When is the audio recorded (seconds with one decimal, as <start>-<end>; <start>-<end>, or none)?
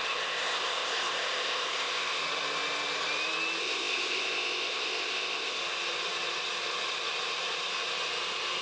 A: 2.2-3.6; 5.6-8.6